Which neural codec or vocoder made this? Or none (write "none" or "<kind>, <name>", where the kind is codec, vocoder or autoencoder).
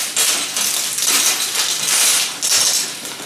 none